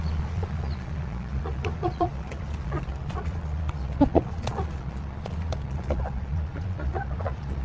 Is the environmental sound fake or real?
fake